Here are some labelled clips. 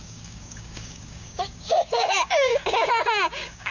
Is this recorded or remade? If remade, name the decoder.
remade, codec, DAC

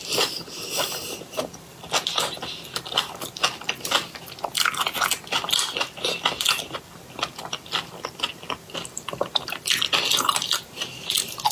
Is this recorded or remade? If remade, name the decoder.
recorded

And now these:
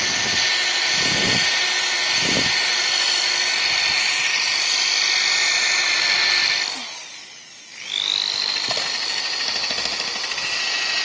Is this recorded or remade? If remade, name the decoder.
recorded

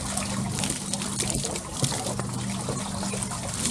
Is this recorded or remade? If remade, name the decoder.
recorded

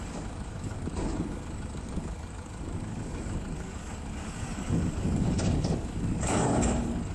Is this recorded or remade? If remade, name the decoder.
remade, codec, DAC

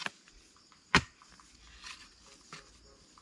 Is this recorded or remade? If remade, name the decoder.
recorded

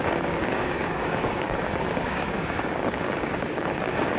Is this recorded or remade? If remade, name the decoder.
remade, codec, DAC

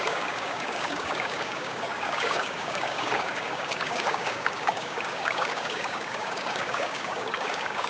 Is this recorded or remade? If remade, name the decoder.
remade, codec, DAC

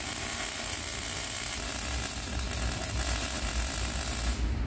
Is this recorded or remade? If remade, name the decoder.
recorded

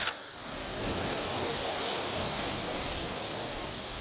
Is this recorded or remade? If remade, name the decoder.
remade, codec, DAC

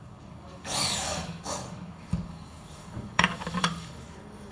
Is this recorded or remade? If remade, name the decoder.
remade, codec, DAC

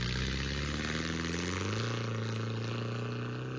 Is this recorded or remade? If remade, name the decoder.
recorded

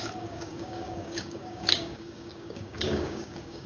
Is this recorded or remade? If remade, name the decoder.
remade, codec, DAC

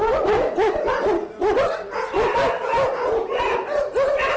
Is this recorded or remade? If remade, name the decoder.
recorded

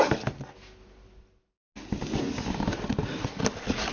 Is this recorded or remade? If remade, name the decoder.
recorded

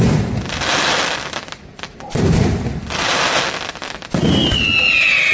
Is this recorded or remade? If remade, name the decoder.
recorded